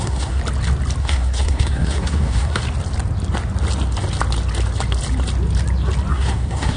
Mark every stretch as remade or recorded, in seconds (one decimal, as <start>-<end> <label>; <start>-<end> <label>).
0.0-0.4 remade; 0.4-1.0 recorded; 1.0-2.6 remade; 2.6-6.1 recorded; 6.1-6.8 remade